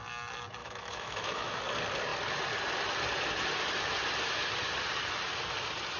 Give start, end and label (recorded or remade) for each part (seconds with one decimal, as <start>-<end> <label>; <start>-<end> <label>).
0.0-0.6 recorded; 0.6-1.6 remade; 1.6-6.0 recorded